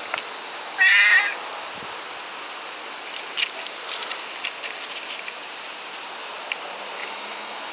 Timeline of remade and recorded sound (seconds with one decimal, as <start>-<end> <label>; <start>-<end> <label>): 0.0-7.0 recorded; 7.0-7.7 remade